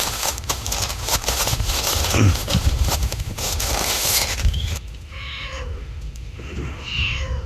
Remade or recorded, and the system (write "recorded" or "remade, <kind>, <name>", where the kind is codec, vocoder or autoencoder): remade, autoencoder, DAC-VAE